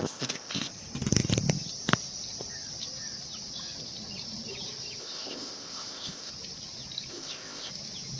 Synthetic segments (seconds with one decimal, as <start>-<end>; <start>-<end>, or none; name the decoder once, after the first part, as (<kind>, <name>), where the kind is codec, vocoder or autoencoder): 0.0-0.7 (codec, ZipCodec); 5.0-6.3; 7.1-7.7